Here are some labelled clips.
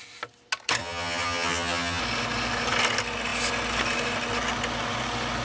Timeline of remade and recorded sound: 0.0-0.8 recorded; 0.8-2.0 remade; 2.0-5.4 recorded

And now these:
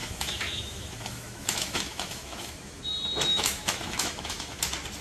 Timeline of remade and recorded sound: 0.0-2.8 remade; 2.8-3.3 recorded; 3.3-4.6 remade; 4.6-5.0 recorded